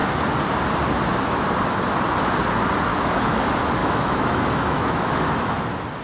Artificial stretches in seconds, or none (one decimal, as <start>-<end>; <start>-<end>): 2.9-3.4; 3.8-5.6